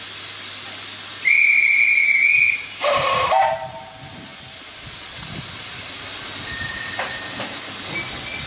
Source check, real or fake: real